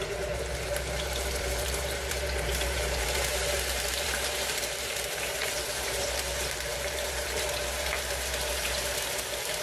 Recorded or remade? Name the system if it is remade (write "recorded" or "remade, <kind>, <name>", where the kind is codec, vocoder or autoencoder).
remade, vocoder, BigVGAN v2